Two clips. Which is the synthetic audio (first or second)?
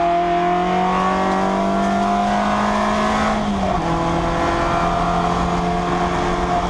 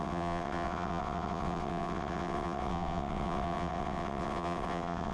second